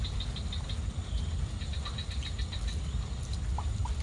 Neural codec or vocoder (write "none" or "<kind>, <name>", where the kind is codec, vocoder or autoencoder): none